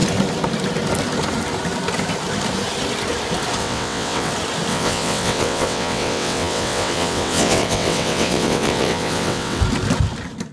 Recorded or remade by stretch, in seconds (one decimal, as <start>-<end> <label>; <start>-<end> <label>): 0.0-3.6 recorded; 3.6-4.3 remade; 4.3-4.7 recorded; 4.7-9.6 remade; 9.6-10.5 recorded